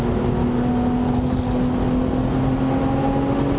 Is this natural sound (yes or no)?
yes